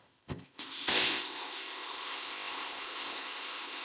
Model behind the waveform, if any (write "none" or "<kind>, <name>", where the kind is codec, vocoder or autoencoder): codec, ZipCodec